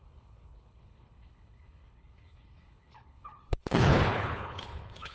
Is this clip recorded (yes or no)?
no